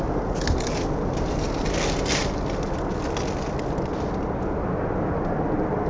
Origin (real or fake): real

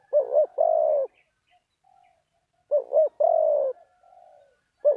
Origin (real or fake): real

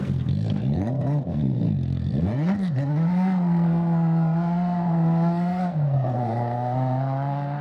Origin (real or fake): fake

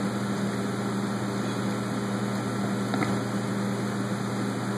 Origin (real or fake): real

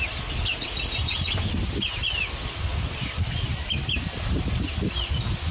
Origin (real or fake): real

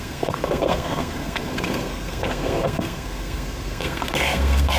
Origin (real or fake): fake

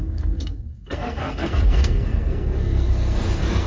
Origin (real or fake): fake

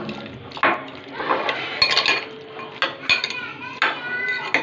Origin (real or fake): real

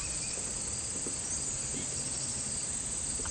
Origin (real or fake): real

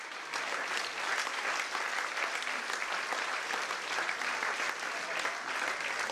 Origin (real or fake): real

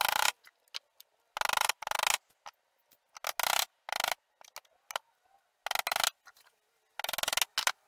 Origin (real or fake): real